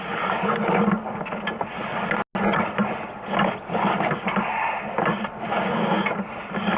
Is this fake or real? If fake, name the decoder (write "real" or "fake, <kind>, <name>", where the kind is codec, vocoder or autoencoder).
real